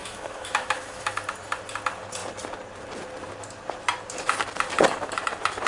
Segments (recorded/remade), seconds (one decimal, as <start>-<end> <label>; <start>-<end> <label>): 0.0-1.1 remade; 1.1-5.7 recorded